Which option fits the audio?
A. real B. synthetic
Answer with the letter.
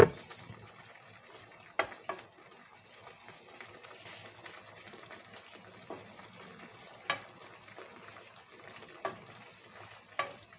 A